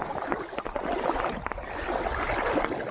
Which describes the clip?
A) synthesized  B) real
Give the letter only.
B